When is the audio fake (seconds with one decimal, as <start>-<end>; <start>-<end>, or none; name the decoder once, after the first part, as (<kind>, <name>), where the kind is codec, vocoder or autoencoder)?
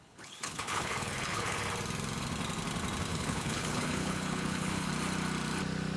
0.0-1.6 (codec, HILCodec); 3.1-4.9